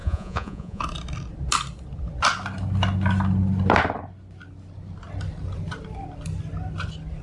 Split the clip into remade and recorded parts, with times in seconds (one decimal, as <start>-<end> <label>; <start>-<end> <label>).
0.0-0.8 remade; 0.8-7.2 recorded